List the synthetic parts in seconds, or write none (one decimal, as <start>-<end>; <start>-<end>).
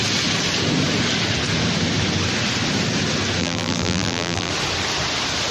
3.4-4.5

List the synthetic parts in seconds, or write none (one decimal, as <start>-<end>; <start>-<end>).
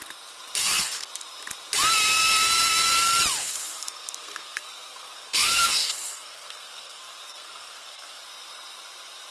0.6-1.1; 3.4-8.2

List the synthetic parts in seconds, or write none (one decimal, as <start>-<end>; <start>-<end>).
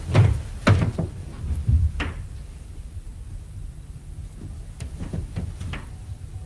0.0-3.1; 4.9-6.5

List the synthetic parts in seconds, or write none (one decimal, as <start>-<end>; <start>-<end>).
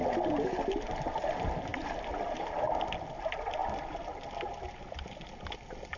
none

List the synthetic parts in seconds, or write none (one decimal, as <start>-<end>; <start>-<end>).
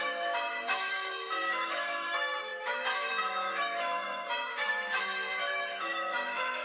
0.0-6.6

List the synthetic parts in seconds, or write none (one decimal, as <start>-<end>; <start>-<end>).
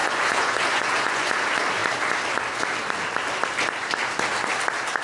0.0-1.3